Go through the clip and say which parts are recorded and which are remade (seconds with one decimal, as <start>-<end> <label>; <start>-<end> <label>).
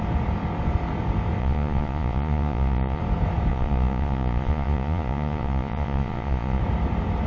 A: 0.0-1.4 recorded; 1.4-3.0 remade; 3.0-3.5 recorded; 3.5-6.6 remade; 6.6-7.3 recorded